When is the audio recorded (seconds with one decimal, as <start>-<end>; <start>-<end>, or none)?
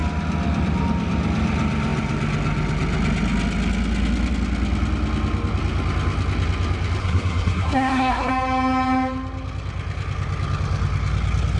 0.0-7.0; 8.3-11.6